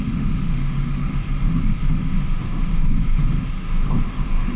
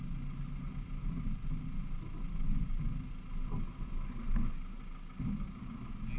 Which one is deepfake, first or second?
first